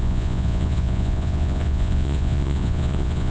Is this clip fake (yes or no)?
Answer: yes